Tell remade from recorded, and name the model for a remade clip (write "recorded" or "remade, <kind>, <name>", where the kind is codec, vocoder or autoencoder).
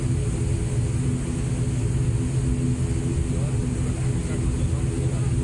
recorded